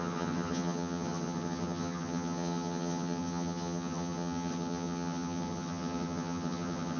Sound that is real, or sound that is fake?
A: fake